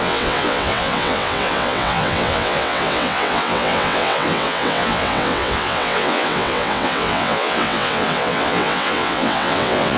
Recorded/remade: remade